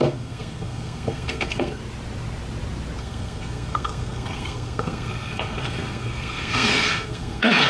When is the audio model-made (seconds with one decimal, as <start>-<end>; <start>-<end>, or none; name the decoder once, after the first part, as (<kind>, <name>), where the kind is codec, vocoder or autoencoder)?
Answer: 0.0-1.8 (codec, SNAC); 3.0-7.7